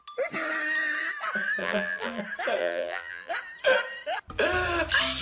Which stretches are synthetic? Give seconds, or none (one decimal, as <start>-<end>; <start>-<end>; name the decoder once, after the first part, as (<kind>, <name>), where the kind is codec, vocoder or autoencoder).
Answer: 1.6-2.2 (vocoder, BigVGAN v2); 2.6-3.3